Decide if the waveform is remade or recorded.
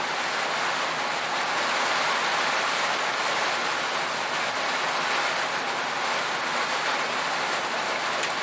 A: recorded